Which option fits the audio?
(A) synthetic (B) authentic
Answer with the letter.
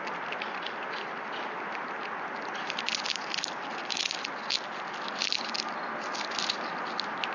B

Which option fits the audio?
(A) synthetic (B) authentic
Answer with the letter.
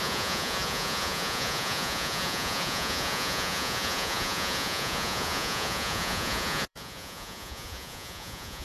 A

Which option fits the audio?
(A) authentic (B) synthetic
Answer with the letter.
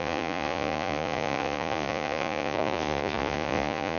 B